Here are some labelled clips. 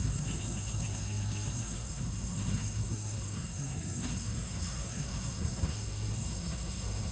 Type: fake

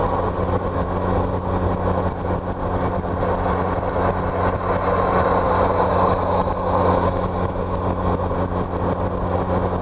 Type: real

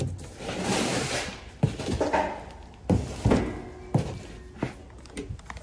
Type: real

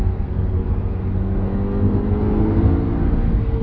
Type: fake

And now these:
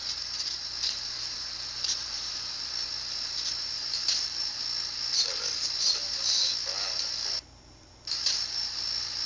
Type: real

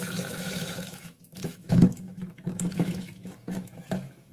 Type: fake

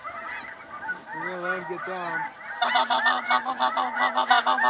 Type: real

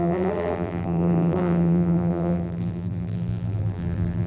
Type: fake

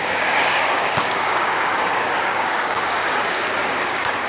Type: fake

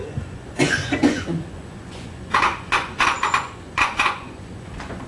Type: fake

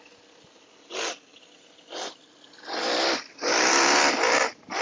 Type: real